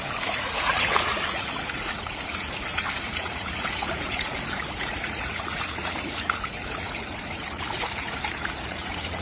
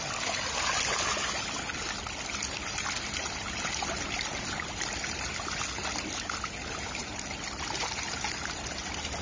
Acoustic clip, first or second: second